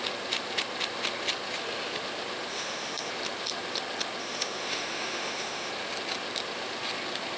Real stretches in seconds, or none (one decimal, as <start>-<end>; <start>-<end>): 0.0-2.5; 3.1-4.2; 5.7-7.4